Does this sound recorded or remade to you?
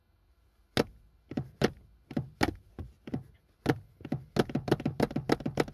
recorded